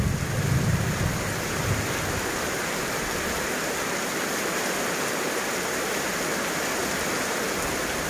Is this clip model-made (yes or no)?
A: no